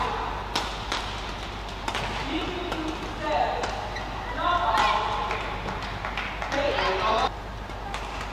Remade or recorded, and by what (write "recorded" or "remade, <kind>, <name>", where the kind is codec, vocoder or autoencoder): recorded